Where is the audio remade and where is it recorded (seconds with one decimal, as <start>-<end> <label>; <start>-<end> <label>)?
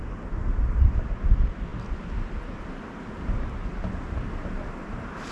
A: 0.0-0.4 recorded; 0.4-1.1 remade; 1.1-5.3 recorded